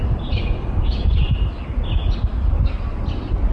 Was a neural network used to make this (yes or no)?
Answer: no